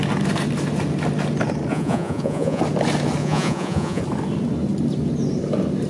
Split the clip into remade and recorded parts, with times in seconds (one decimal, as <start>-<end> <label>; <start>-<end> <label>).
0.0-1.7 recorded; 1.7-2.6 remade; 2.6-3.2 recorded; 3.2-4.0 remade; 4.0-5.9 recorded

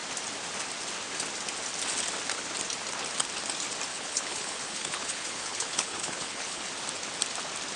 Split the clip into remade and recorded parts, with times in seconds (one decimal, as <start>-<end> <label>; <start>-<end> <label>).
0.0-3.9 recorded; 3.9-6.7 remade; 6.7-7.8 recorded

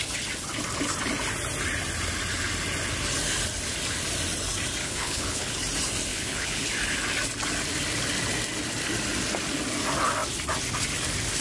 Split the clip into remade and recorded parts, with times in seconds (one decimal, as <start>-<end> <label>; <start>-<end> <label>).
0.0-4.8 recorded; 4.8-5.5 remade; 5.5-6.1 recorded; 6.1-6.7 remade; 6.7-11.4 recorded